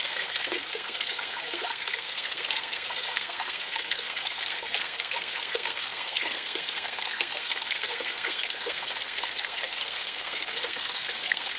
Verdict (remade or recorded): remade